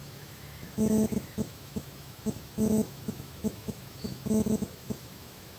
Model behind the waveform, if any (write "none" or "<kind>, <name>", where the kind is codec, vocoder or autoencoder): autoencoder, DAC-VAE